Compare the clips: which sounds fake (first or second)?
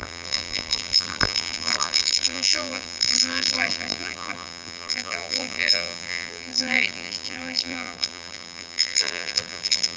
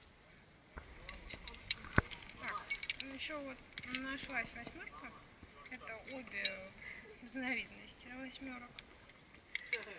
first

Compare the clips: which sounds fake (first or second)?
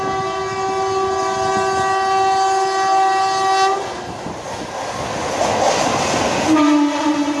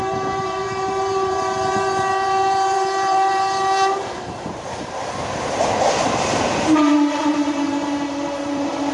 second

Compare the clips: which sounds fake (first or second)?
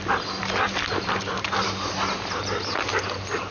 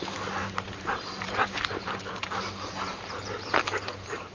second